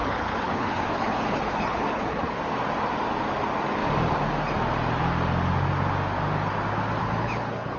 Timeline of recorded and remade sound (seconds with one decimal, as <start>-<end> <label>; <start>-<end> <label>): 0.0-2.4 remade; 2.4-7.0 recorded; 7.0-7.8 remade